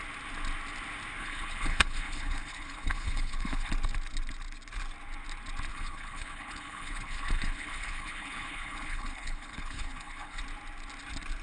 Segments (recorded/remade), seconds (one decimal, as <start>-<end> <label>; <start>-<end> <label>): 0.0-1.2 recorded; 1.2-3.7 remade; 3.7-5.7 recorded; 5.7-10.4 remade; 10.4-11.4 recorded